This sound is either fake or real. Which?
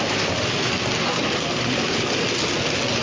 real